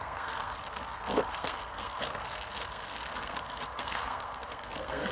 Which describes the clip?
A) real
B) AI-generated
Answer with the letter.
B